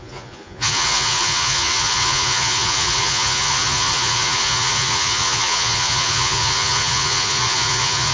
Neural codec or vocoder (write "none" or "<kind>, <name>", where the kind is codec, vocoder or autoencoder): vocoder, Vocos